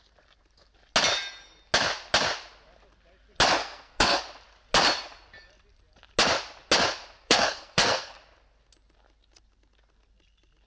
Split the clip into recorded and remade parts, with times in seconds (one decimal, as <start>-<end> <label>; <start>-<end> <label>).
0.0-3.6 recorded; 3.6-4.2 remade; 4.2-7.2 recorded; 7.2-8.2 remade; 8.2-10.7 recorded